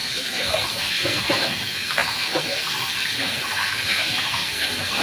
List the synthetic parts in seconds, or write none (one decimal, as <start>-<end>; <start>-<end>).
0.0-5.0